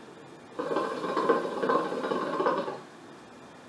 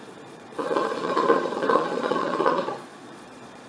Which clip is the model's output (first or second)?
second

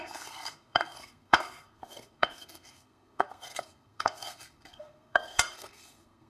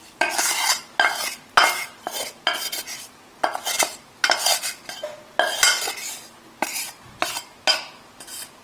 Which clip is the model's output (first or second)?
first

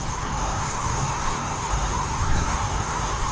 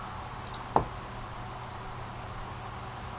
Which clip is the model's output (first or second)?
first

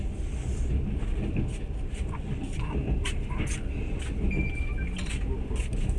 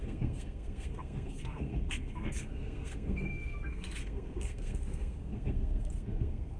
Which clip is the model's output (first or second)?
second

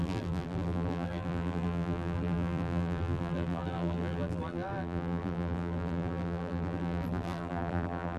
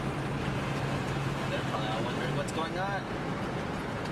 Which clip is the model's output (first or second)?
first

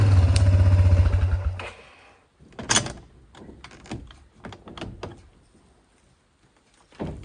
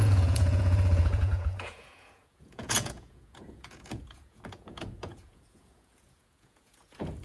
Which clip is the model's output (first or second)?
second